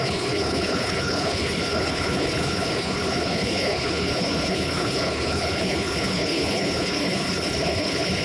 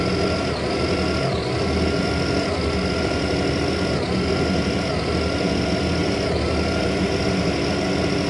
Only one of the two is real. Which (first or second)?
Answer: second